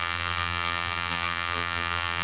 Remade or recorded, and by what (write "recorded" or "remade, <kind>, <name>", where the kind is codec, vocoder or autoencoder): remade, vocoder, BigVGAN v2